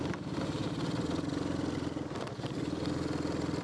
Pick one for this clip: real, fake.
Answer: real